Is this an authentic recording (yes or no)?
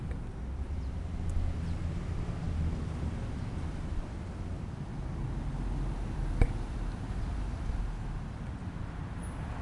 yes